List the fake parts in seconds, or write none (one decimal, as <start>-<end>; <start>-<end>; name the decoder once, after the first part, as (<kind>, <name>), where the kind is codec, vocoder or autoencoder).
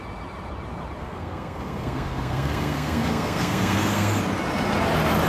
1.0-4.2 (codec, SNAC)